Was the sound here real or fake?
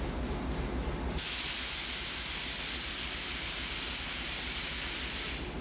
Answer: real